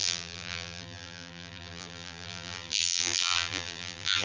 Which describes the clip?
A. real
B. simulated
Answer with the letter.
B